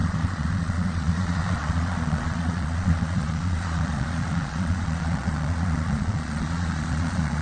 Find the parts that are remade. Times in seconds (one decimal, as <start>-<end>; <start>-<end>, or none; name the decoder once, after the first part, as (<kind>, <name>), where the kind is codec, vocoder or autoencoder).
0.0-7.4 (vocoder, Vocos)